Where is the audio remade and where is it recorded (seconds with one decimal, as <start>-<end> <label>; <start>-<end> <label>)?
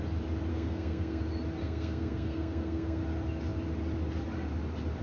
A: 0.0-0.5 recorded; 0.5-1.2 remade; 1.2-1.6 recorded; 1.6-3.0 remade; 3.0-5.0 recorded